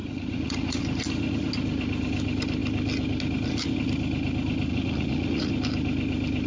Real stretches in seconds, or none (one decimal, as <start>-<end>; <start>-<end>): 0.8-4.7; 5.5-6.5